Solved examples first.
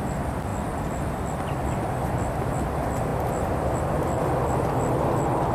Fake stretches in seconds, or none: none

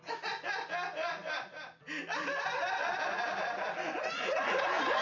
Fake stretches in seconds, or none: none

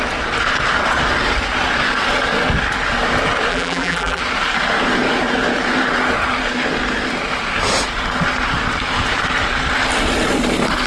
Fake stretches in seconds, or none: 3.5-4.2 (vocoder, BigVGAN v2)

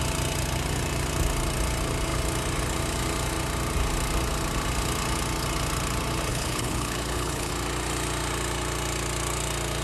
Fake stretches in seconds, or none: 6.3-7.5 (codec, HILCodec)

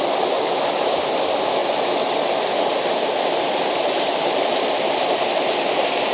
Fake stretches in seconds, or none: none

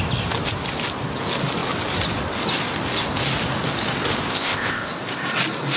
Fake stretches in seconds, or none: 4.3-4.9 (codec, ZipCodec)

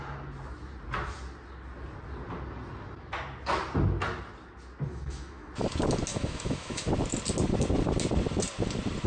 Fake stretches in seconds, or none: 4.9-5.5 (autoencoder, DAC-VAE); 6.1-6.9

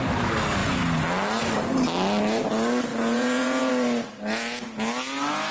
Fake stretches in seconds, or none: 2.9-3.7 (vocoder, Vocos)